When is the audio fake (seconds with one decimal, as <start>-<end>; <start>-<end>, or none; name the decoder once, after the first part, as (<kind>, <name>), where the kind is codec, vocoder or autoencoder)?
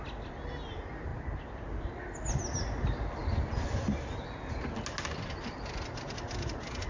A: none